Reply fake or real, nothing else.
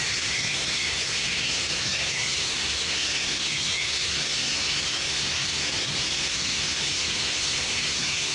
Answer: fake